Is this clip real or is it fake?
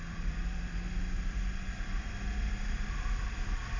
fake